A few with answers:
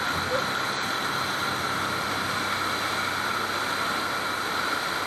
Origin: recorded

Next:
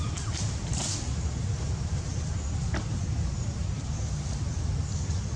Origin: recorded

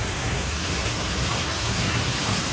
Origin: remade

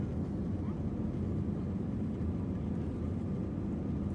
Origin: recorded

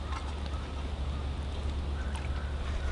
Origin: recorded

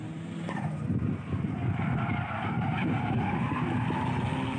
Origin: recorded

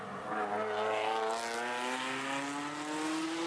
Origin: recorded